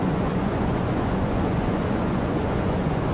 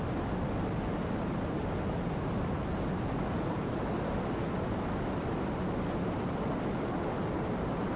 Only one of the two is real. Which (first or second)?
second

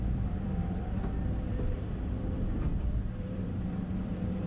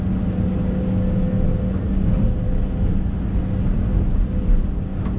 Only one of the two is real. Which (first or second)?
second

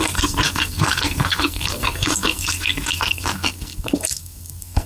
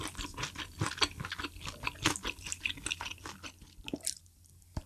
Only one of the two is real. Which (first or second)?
second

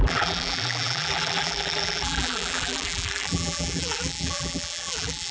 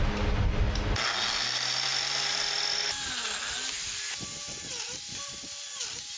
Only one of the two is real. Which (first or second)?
second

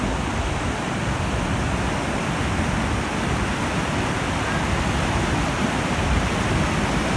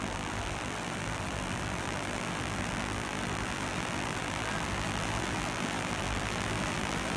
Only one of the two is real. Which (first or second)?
first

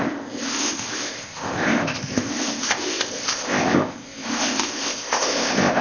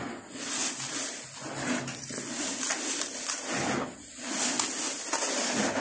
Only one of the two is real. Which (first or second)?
second